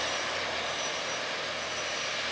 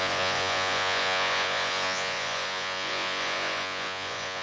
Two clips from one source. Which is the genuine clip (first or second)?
first